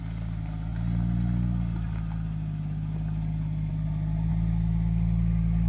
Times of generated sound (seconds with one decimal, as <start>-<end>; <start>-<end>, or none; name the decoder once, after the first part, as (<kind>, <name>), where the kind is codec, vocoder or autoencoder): none